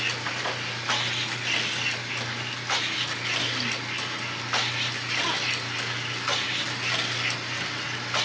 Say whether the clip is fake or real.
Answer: real